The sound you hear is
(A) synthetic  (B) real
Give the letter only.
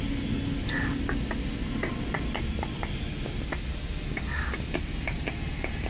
B